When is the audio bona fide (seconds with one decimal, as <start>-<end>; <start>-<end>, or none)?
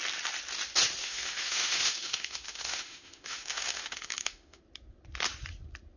0.0-1.0; 4.6-6.0